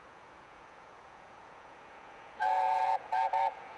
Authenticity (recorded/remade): remade